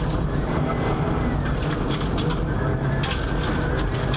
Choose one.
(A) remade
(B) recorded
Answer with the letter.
B